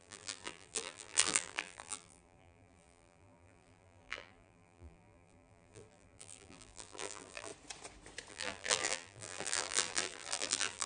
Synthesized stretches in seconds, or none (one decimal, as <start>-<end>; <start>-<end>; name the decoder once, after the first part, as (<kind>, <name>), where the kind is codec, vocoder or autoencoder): 0.0-7.5 (vocoder, BigVGAN v2); 8.3-10.9